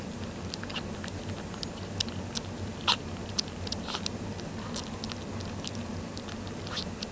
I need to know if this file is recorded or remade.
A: recorded